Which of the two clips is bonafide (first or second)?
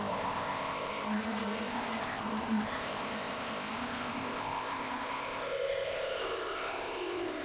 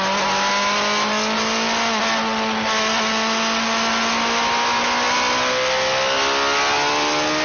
second